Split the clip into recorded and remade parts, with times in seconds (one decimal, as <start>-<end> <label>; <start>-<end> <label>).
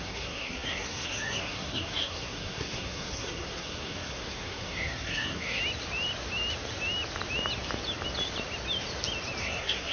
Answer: 0.0-5.6 remade; 5.6-9.4 recorded; 9.4-9.9 remade